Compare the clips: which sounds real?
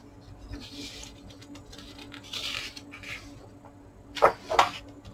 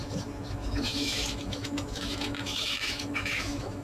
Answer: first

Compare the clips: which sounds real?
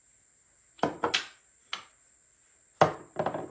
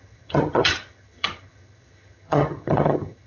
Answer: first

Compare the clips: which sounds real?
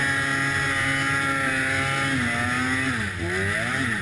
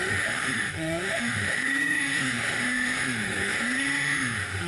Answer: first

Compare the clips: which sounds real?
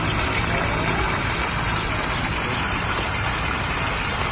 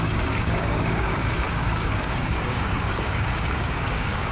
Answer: first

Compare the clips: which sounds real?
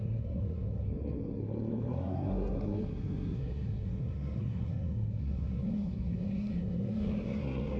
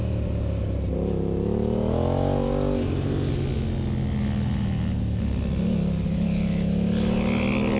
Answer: second